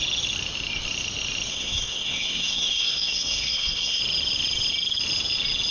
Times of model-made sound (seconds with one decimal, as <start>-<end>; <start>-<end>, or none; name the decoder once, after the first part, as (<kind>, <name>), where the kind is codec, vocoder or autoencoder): 1.5-4.0 (codec, SNAC)